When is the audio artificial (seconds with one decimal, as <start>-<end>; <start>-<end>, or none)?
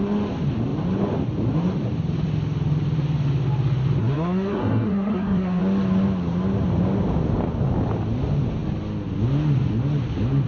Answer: 4.0-5.6